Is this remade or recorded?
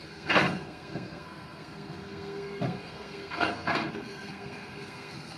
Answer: remade